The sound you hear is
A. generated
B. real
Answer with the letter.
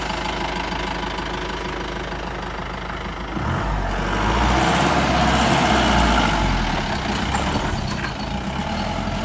B